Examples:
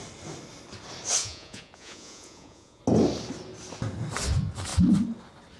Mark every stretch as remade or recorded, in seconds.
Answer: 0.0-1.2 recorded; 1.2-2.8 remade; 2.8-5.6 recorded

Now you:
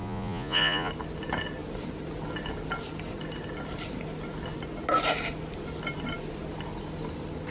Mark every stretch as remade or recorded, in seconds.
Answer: 0.0-0.9 remade; 0.9-7.5 recorded

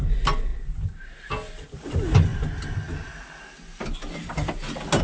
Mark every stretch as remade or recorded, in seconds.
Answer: 0.0-5.0 recorded

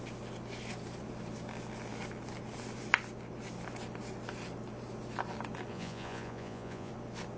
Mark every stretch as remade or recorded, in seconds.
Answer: 0.0-5.7 recorded; 5.7-6.9 remade; 6.9-7.4 recorded